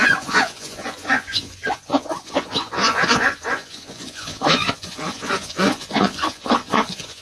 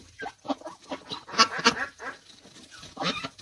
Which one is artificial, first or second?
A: first